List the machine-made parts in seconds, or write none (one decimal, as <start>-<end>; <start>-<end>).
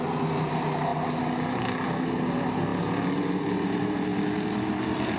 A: none